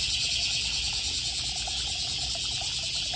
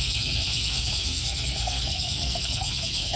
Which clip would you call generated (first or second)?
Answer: second